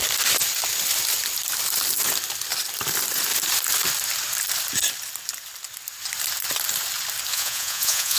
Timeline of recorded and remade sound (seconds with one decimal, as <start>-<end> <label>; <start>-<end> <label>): 0.0-7.3 recorded; 7.3-8.2 remade